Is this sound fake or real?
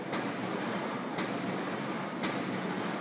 real